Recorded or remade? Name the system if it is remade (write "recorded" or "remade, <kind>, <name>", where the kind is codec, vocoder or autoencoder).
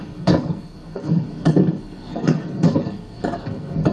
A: remade, codec, SNAC